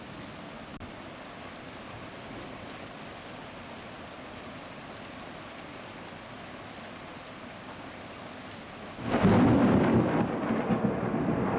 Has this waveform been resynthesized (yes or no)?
no